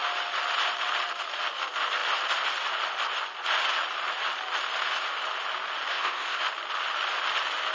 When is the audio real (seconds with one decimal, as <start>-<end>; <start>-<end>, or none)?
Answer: 0.0-5.9; 6.4-7.7